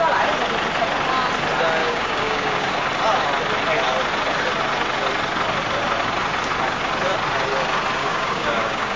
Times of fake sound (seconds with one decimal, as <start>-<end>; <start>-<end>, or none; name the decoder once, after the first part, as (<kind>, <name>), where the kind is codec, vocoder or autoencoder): 1.8-2.7 (codec, DAC); 8.0-9.0